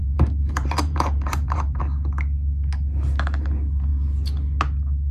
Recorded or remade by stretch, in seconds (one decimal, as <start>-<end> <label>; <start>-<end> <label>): 0.0-1.8 remade; 1.8-5.1 recorded